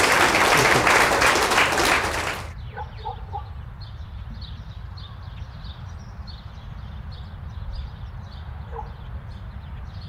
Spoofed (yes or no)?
yes